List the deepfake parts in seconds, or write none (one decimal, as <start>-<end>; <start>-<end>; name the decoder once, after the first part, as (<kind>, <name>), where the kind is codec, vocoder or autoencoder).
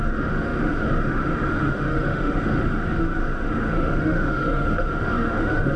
0.0-5.8 (autoencoder, DAC-VAE)